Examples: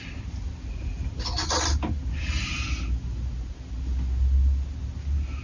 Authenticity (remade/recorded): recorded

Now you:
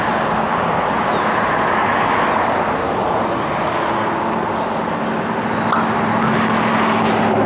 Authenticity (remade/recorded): recorded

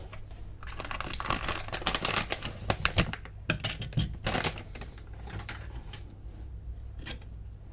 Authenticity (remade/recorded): recorded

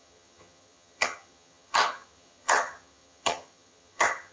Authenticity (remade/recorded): remade